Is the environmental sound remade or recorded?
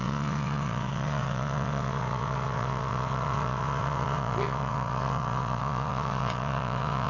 remade